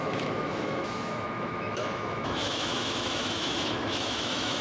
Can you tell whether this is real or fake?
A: fake